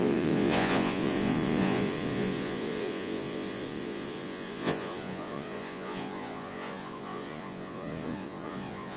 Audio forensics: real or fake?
fake